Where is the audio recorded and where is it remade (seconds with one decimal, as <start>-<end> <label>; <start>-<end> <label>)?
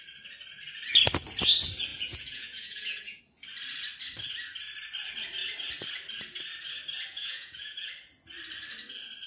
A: 0.0-1.9 recorded; 1.9-3.2 remade; 3.2-7.1 recorded; 7.1-7.9 remade; 7.9-9.3 recorded